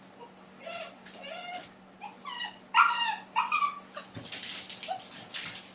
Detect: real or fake real